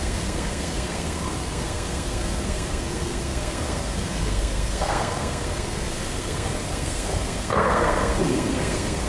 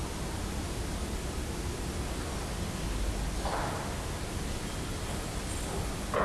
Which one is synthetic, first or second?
first